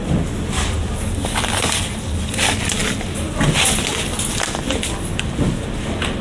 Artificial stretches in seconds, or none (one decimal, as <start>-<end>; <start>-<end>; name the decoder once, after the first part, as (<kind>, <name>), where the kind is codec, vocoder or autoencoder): none